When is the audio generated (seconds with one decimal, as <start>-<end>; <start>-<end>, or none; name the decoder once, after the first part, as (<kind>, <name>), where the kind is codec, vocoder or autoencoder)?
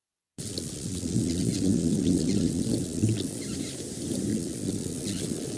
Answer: 0.0-3.4 (vocoder, Vocos); 4.3-5.6